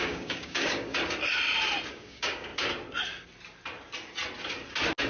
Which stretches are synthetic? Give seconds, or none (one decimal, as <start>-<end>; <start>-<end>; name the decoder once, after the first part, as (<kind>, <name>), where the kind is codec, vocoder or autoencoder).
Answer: 0.0-0.9 (codec, DAC); 1.9-2.5